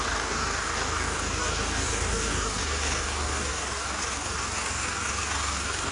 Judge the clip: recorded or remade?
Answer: remade